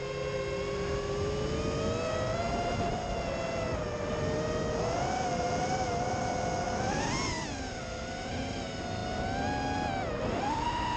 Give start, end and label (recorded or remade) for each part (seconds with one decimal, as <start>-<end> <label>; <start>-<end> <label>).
0.0-11.0 recorded